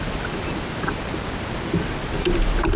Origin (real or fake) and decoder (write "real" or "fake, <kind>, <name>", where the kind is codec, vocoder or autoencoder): real